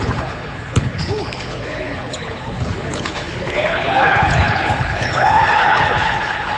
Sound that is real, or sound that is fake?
fake